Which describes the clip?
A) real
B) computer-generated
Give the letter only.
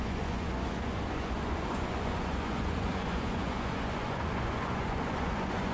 B